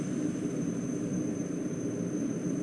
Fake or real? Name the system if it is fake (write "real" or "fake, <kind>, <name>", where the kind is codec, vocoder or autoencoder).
fake, vocoder, BigVGAN v2